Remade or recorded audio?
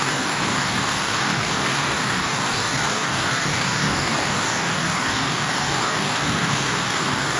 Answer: remade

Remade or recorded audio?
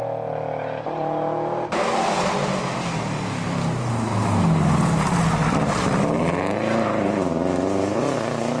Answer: recorded